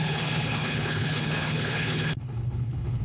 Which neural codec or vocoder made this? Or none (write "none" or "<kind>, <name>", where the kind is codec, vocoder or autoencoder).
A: codec, HILCodec